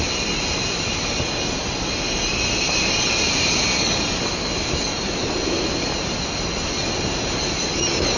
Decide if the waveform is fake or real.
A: real